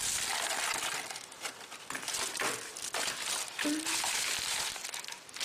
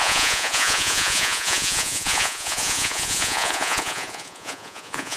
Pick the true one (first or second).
first